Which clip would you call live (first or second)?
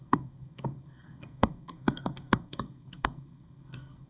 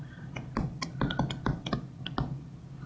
second